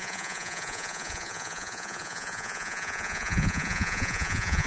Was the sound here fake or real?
fake